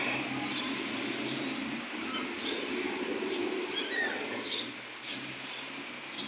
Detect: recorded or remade recorded